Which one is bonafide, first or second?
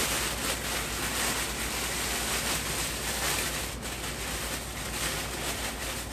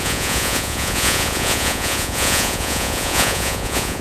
first